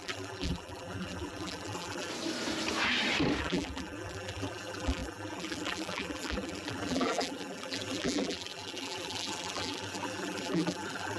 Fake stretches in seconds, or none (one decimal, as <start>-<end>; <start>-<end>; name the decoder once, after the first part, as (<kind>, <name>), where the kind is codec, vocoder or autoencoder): 0.0-2.1 (vocoder, BigVGAN v2); 3.4-11.2